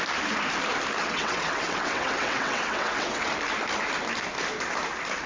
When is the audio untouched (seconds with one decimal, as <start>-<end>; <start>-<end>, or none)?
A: 0.0-1.0; 3.3-5.3

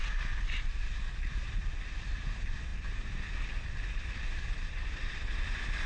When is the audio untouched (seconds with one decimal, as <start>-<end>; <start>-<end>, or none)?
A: 0.0-2.7

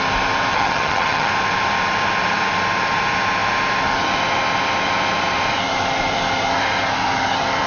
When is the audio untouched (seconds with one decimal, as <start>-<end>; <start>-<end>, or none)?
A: 0.0-0.5; 1.3-7.7